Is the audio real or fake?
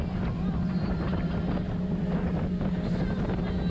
real